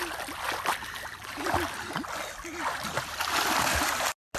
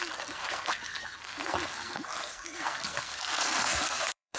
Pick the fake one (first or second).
second